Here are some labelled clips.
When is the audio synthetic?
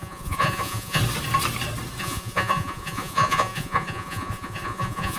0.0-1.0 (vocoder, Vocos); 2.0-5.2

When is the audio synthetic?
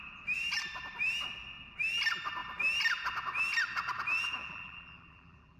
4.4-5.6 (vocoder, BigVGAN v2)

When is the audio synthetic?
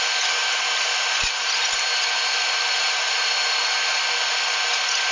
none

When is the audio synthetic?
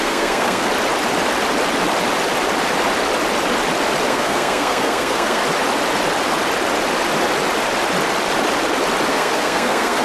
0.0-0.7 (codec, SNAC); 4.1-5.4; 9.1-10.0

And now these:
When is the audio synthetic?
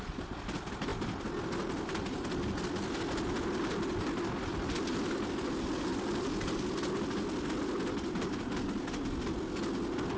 none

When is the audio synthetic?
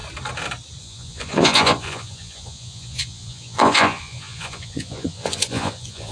0.8-6.1 (vocoder, Vocos)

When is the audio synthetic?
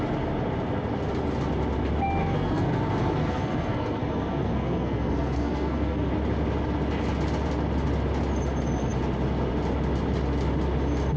2.2-2.8 (codec, SNAC); 3.2-6.1